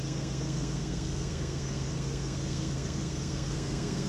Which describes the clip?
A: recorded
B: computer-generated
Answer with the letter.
B